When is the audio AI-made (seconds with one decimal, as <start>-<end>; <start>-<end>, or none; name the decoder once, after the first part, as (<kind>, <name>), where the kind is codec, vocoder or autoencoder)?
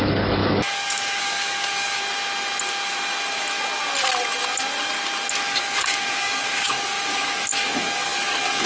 0.0-2.0 (codec, DAC); 5.4-8.7